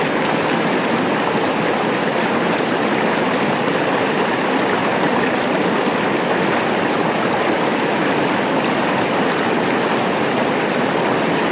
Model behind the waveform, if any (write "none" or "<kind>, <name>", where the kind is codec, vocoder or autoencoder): none